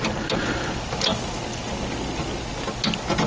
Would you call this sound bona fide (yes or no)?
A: yes